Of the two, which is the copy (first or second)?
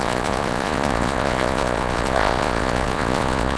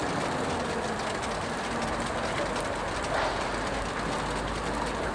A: first